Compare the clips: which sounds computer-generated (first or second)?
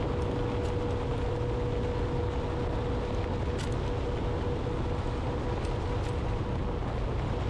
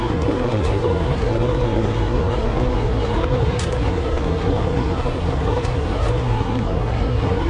second